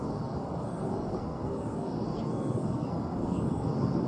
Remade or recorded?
remade